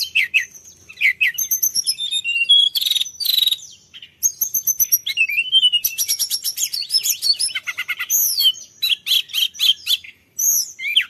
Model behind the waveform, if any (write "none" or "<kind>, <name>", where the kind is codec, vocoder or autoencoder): vocoder, BigVGAN v2